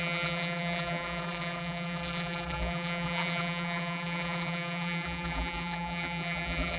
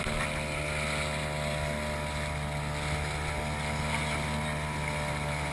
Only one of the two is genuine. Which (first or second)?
second